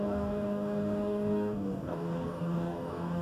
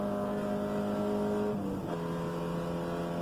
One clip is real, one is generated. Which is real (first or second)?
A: second